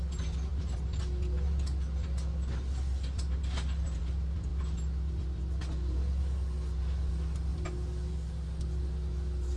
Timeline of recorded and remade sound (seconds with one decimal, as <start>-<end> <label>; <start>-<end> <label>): 0.0-9.6 recorded